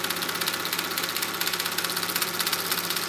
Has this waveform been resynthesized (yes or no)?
no